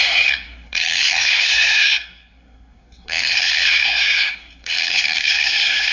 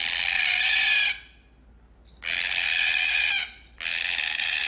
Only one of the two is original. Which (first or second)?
second